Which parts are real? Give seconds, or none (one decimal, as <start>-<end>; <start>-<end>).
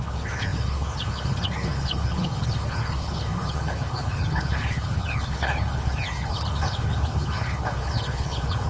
none